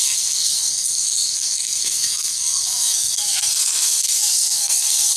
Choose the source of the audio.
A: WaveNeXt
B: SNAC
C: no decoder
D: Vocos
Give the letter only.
B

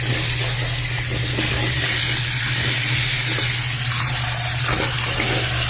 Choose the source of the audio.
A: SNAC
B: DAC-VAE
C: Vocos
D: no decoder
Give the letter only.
D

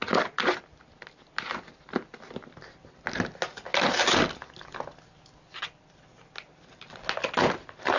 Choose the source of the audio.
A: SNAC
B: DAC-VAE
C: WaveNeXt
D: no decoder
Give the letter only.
D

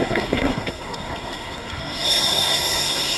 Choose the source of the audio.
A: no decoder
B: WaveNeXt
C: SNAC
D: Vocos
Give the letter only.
C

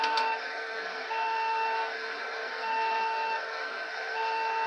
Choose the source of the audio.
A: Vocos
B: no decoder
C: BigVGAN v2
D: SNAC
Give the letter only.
D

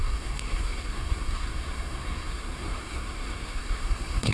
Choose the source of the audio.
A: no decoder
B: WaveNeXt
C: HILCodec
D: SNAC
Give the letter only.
D